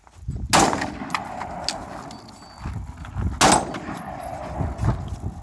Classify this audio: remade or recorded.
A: recorded